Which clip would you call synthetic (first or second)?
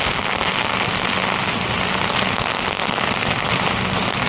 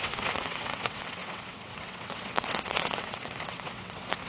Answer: second